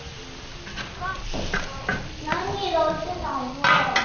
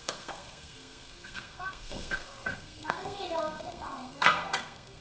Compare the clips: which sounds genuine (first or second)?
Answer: first